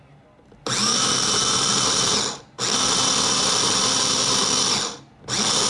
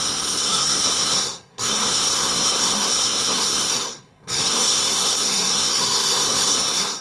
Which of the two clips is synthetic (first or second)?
second